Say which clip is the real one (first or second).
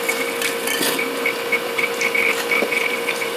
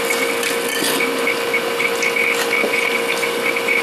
second